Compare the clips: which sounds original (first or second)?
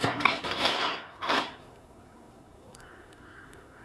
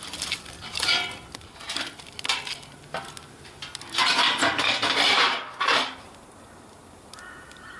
second